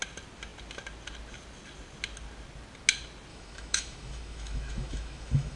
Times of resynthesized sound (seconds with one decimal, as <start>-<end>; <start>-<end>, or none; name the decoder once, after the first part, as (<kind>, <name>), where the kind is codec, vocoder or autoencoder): 3.3-5.6 (autoencoder, DAC-VAE)